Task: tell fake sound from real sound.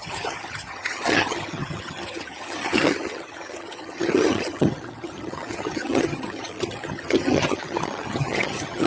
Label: fake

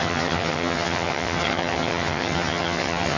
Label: fake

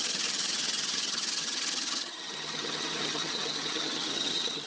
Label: fake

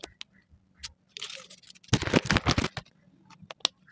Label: real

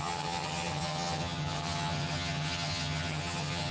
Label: fake